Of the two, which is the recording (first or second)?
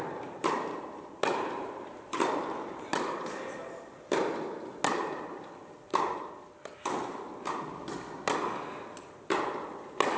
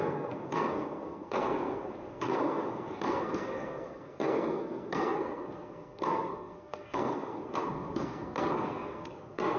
first